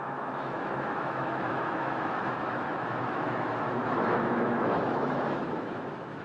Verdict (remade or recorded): remade